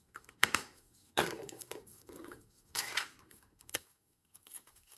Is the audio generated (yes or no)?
yes